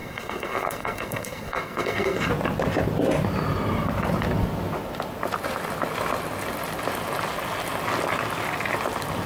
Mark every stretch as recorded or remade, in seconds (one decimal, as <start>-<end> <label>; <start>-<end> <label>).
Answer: 0.0-2.3 remade; 2.3-9.3 recorded